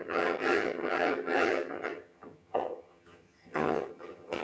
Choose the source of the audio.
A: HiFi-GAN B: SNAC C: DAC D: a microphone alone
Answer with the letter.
A